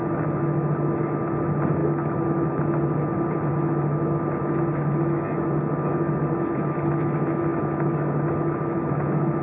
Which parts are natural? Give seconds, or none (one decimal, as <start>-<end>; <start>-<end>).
0.0-9.4